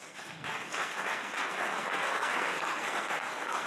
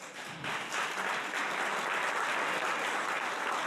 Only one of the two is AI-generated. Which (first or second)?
first